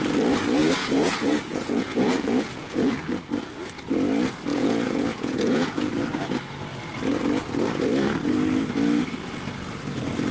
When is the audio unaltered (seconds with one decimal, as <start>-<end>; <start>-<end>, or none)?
0.0-0.6; 3.1-4.5; 5.9-10.3